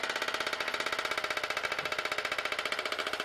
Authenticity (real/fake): real